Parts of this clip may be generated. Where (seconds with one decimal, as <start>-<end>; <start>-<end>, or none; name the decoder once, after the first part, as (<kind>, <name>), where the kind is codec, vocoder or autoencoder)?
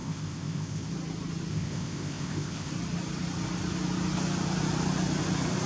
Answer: 0.0-0.9 (codec, ZipCodec); 1.5-2.7